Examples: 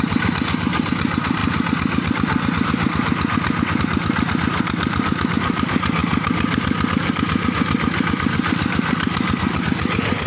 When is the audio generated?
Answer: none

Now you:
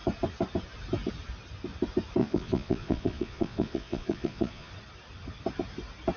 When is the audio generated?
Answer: 2.2-4.7 (vocoder, Vocos)

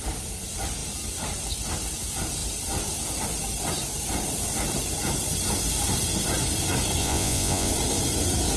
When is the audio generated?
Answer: 7.0-7.7 (vocoder, Vocos)

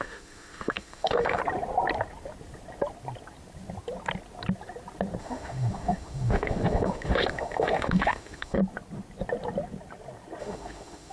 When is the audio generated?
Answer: 0.0-1.4 (autoencoder, DAC-VAE); 5.2-8.6; 10.4-11.1

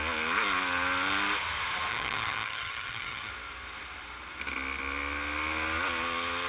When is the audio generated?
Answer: 1.9-3.3 (vocoder, HiFi-GAN)

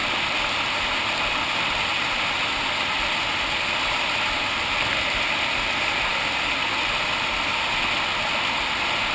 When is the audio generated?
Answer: none

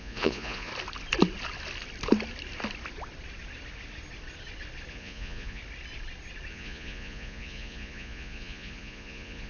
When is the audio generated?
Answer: 0.0-0.7 (vocoder, Vocos); 4.9-5.6; 6.5-9.5